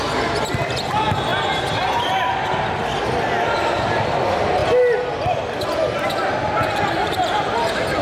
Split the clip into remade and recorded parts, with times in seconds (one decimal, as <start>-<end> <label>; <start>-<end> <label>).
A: 0.0-8.0 recorded